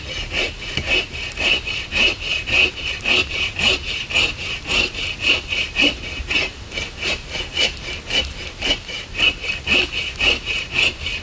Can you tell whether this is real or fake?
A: fake